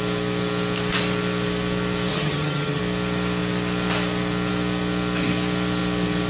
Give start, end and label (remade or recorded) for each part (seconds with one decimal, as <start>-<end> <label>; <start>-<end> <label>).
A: 0.0-2.1 recorded; 2.1-2.8 remade; 2.8-6.3 recorded